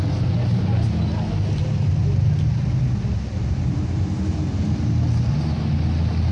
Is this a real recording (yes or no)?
yes